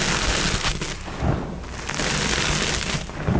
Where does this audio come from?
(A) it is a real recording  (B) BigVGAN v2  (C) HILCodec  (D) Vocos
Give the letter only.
A